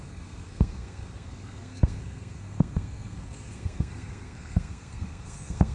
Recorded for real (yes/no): no